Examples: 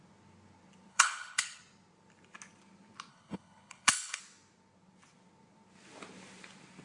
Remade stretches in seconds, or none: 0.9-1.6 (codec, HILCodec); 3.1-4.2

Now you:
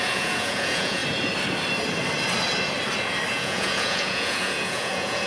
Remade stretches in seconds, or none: 0.0-1.0 (vocoder, Vocos); 3.3-5.3

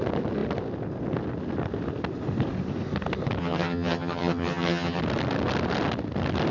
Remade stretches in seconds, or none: 3.4-5.0 (vocoder, HiFi-GAN)

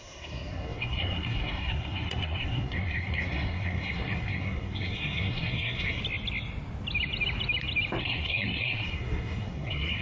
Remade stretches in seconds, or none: 0.0-6.0 (codec, SNAC); 8.0-10.0